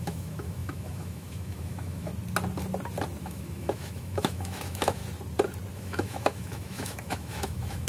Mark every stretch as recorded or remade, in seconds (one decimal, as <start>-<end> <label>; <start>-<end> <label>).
0.0-2.1 remade; 2.1-3.2 recorded; 3.2-5.0 remade; 5.0-5.7 recorded; 5.7-7.9 remade